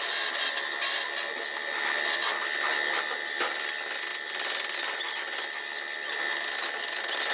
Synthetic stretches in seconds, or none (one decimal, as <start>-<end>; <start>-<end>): none